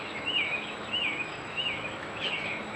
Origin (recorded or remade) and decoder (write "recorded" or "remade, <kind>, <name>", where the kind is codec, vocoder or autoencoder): remade, autoencoder, DAC-VAE